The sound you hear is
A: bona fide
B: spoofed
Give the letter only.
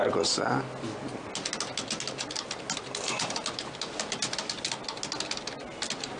A